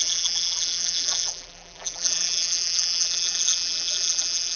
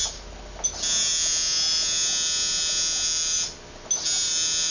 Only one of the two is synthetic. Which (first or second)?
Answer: first